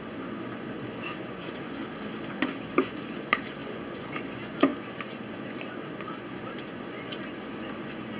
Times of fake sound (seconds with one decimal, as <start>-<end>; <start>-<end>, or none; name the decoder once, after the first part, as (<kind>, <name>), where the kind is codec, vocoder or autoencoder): 0.0-1.8 (vocoder, Vocos); 2.3-8.2